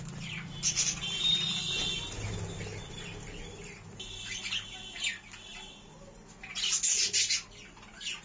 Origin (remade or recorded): recorded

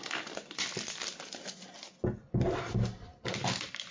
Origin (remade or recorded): recorded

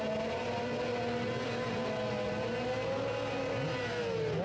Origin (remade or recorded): recorded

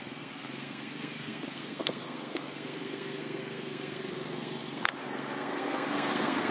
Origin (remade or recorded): remade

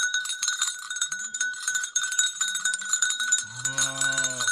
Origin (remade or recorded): remade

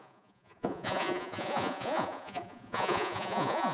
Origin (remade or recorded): remade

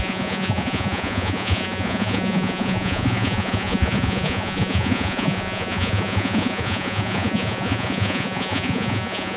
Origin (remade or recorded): remade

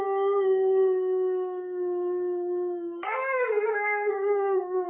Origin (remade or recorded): remade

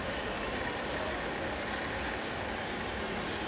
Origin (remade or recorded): recorded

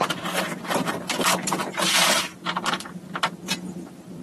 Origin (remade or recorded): remade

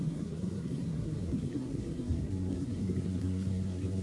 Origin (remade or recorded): remade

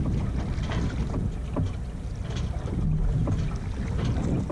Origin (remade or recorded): recorded